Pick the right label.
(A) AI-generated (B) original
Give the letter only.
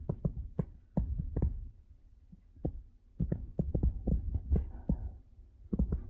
B